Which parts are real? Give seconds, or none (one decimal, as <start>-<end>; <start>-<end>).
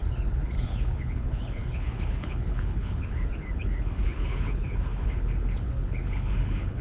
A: none